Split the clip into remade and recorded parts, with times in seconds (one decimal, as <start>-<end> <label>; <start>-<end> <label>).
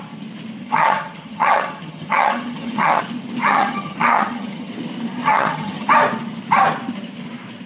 0.0-0.6 recorded; 0.6-3.0 remade; 3.0-3.4 recorded; 3.4-4.7 remade; 4.7-5.2 recorded; 5.2-5.9 remade; 5.9-7.7 recorded